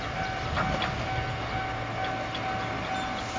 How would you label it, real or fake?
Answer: real